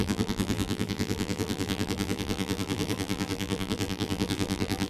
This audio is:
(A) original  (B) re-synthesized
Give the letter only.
B